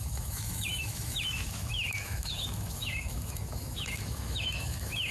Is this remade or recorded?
remade